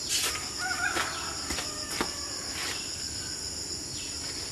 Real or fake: real